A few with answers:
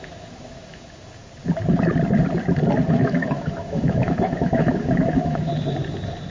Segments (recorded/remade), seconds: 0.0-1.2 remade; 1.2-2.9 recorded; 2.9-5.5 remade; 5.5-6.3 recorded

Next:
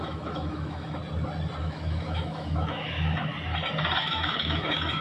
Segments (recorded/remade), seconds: 0.0-1.0 remade; 1.0-1.6 recorded; 1.6-3.3 remade; 3.3-4.0 recorded; 4.0-5.0 remade